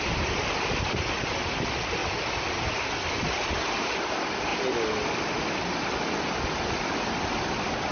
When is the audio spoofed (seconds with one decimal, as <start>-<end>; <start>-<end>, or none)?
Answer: none